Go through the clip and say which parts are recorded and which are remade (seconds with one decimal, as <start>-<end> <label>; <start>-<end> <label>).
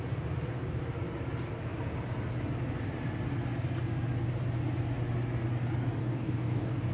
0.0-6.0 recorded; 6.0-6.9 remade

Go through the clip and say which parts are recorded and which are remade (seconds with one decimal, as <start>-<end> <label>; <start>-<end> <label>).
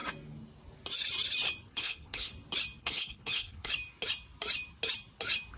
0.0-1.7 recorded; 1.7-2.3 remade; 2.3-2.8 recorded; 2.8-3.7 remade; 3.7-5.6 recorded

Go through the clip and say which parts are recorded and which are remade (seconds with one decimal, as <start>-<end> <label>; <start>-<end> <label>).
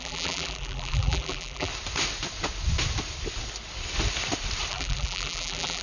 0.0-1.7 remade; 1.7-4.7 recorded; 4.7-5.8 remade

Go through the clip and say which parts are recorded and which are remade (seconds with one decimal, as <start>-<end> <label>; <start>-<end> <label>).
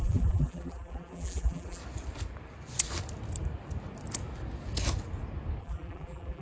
0.0-1.8 remade; 1.8-5.6 recorded; 5.6-6.4 remade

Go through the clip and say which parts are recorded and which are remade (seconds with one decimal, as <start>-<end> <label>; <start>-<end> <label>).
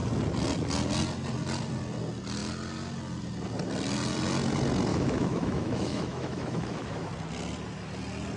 0.0-4.9 recorded; 4.9-7.1 remade; 7.1-8.4 recorded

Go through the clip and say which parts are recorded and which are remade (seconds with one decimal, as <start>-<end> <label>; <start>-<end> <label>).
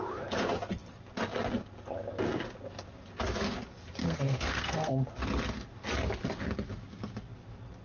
0.0-4.0 recorded; 4.0-4.9 remade; 4.9-7.8 recorded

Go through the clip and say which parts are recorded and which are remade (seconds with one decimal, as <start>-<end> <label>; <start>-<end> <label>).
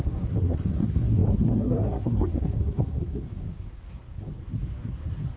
0.0-5.4 remade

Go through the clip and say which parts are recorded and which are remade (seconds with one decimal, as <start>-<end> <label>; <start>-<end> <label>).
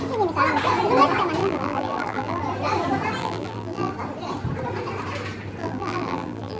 0.0-1.4 recorded; 1.4-2.4 remade; 2.4-3.2 recorded; 3.2-3.9 remade; 3.9-5.6 recorded; 5.6-6.6 remade